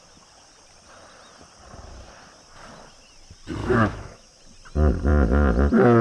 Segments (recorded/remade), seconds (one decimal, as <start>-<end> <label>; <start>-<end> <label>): 0.0-3.6 recorded; 3.6-4.4 remade; 4.4-6.0 recorded